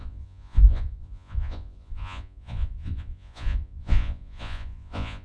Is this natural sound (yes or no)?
no